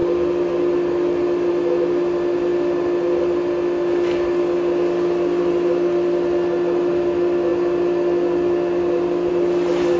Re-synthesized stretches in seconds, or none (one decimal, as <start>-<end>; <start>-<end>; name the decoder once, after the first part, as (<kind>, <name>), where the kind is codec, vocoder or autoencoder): none

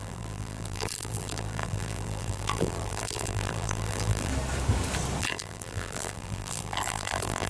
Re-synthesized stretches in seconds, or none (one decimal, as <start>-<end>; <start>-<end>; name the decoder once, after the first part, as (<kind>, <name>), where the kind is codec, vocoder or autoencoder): 0.0-4.3 (vocoder, BigVGAN v2); 5.2-7.5

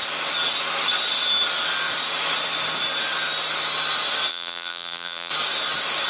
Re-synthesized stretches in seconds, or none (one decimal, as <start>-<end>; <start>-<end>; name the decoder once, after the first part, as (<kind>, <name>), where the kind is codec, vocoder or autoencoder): 4.3-5.3 (vocoder, BigVGAN v2)

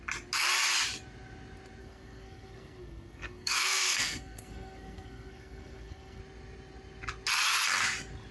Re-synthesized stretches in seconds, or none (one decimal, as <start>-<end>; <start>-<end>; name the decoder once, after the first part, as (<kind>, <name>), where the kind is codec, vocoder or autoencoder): 1.8-6.2 (codec, SNAC)

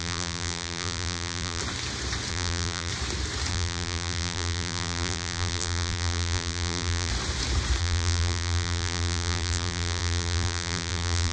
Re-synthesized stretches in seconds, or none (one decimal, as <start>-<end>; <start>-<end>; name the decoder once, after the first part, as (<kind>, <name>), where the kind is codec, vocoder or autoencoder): 0.0-1.6 (vocoder, BigVGAN v2); 2.3-2.9; 3.5-7.1; 7.8-11.3

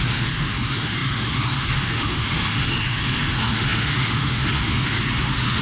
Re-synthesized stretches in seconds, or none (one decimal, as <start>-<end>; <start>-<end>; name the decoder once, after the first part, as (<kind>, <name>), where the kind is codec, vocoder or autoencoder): 0.0-5.6 (autoencoder, DAC-VAE)

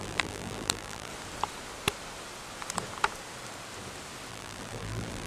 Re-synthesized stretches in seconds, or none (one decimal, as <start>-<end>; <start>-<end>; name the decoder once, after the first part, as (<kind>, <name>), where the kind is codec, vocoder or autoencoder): 0.0-1.1 (vocoder, BigVGAN v2); 4.3-5.3

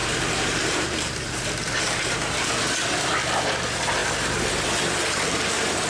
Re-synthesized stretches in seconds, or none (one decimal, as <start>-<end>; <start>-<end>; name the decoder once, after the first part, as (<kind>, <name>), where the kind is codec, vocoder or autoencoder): 0.0-2.5 (vocoder, BigVGAN v2)